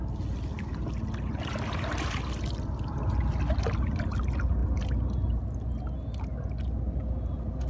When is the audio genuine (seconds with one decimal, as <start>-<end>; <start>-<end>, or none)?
0.0-7.7